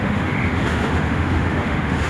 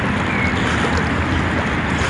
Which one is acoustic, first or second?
second